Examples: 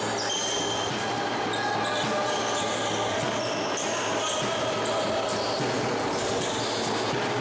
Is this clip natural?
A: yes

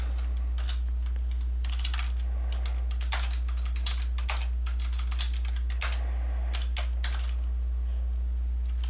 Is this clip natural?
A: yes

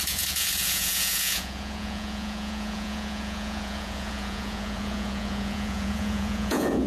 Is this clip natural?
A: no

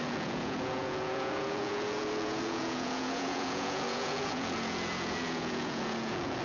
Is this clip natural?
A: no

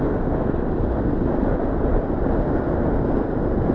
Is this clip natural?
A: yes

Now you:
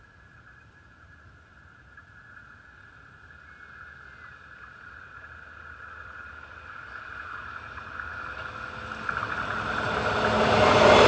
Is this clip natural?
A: yes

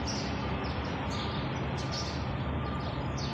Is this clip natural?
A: yes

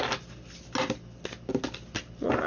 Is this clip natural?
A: yes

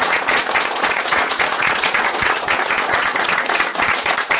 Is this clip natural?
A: no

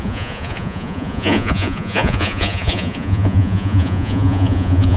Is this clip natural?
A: no